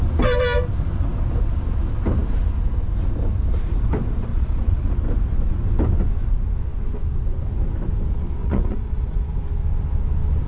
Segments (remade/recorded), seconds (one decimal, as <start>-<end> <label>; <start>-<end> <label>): 0.0-4.3 recorded; 4.3-4.9 remade; 4.9-8.4 recorded; 8.4-9.4 remade; 9.4-10.5 recorded